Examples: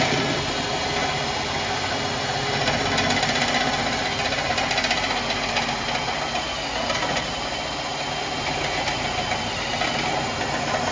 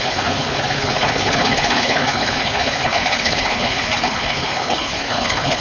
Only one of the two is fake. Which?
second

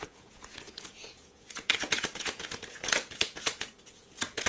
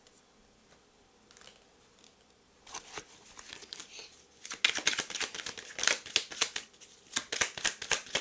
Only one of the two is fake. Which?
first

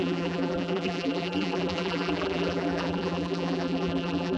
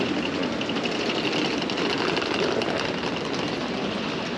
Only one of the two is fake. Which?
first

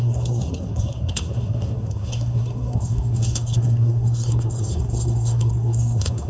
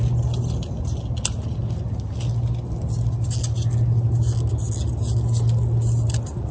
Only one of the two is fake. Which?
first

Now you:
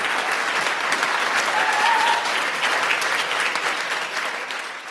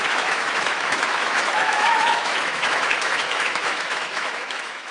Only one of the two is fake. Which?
second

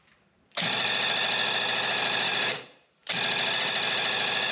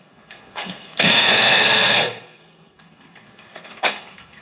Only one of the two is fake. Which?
second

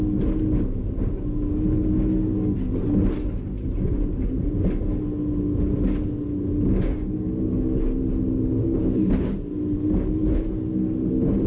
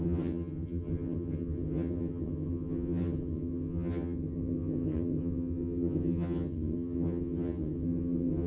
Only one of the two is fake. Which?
second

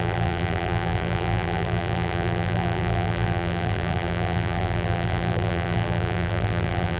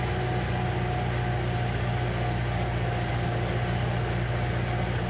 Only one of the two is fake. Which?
first